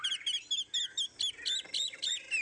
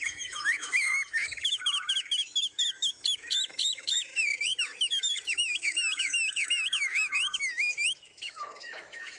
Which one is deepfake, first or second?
second